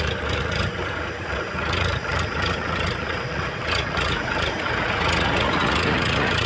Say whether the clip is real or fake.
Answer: fake